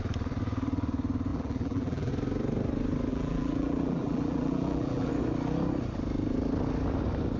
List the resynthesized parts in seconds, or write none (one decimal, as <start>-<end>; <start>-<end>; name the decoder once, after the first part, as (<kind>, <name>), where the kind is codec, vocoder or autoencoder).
1.3-2.1 (vocoder, BigVGAN v2); 3.1-5.1